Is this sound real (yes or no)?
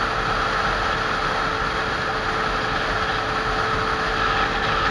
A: yes